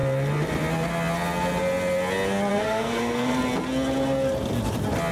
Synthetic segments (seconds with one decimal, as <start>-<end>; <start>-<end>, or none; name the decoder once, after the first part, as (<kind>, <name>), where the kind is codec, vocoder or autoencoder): 2.5-3.4 (codec, SNAC)